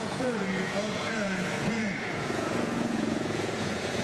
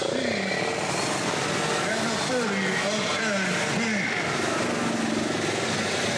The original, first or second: second